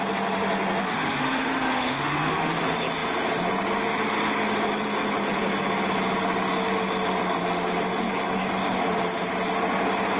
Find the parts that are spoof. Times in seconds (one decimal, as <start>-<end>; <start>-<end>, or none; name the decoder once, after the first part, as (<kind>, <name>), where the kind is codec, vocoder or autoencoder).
0.8-2.6 (autoencoder, DAC-VAE)